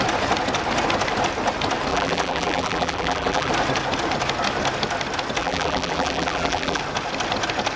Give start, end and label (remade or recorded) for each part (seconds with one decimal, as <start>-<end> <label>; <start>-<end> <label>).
0.0-1.9 recorded; 1.9-3.5 remade; 3.5-5.4 recorded; 5.4-6.8 remade; 6.8-7.8 recorded